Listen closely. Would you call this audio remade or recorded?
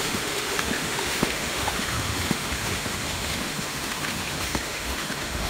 remade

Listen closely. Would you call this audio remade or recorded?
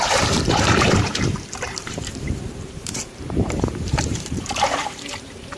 remade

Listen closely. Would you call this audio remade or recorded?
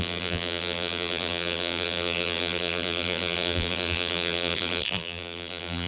remade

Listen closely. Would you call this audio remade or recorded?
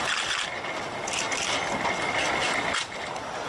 recorded